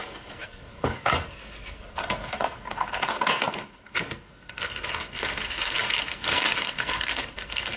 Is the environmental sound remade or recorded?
remade